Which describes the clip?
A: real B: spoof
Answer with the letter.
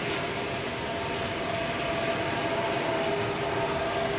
A